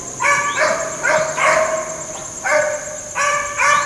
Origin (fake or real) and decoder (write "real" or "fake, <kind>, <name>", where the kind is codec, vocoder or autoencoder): real